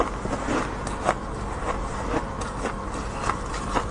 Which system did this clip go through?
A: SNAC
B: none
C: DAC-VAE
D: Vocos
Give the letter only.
B